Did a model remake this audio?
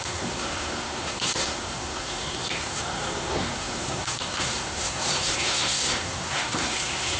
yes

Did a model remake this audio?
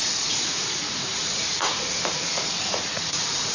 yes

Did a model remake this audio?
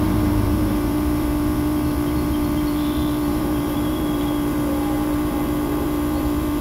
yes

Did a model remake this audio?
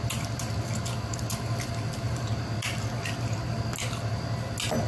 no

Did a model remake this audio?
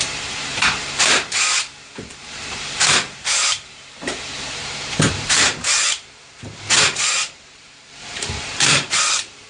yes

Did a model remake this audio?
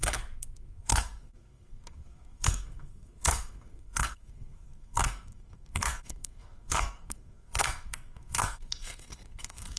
yes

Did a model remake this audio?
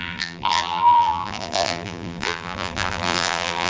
yes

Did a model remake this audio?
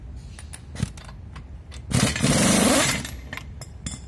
no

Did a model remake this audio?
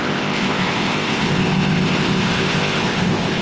yes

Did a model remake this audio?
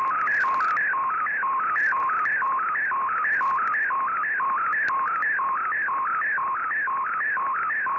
no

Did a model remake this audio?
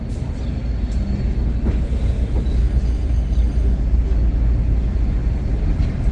no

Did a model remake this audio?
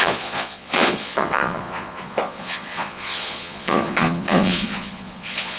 yes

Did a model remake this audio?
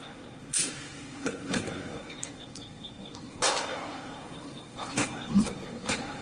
yes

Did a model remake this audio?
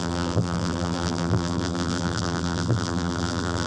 yes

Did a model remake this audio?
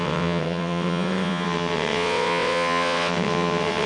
yes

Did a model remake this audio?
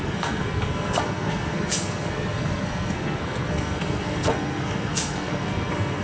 yes